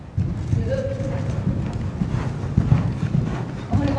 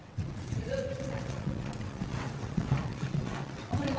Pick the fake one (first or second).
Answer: second